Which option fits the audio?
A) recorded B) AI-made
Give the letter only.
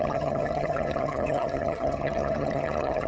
B